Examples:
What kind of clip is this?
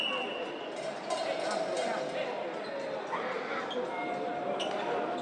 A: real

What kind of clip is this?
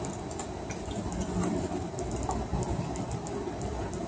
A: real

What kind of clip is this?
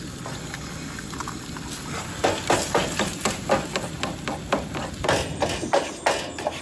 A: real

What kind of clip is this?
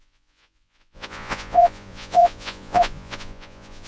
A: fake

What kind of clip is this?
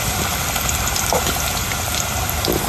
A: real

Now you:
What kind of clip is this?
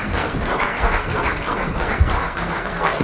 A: fake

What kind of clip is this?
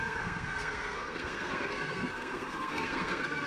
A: fake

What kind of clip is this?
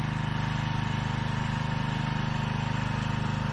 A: real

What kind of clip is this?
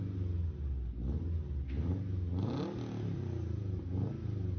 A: real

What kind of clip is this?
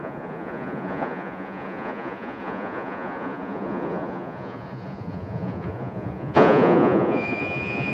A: fake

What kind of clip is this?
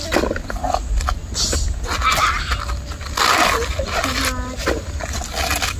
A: real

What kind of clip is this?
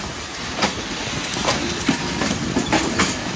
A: real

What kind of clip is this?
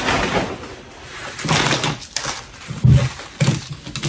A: real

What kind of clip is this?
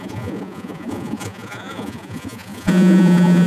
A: fake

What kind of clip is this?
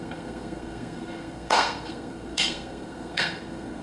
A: fake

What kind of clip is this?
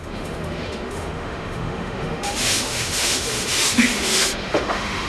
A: fake